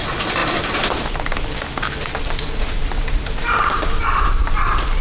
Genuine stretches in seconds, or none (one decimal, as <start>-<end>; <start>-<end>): 0.0-5.0